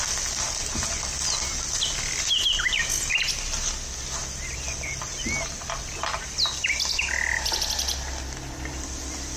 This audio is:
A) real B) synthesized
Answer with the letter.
A